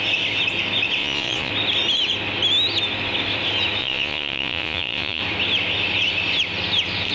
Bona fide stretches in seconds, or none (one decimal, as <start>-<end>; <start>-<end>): 0.0-1.0; 1.5-3.8; 5.2-7.1